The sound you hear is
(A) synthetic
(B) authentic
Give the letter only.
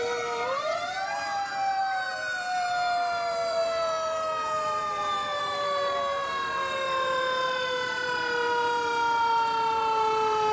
A